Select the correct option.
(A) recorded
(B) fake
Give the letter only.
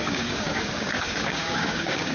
B